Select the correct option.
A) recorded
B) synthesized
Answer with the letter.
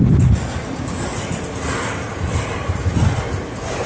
A